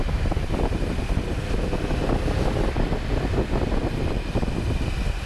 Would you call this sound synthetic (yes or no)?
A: no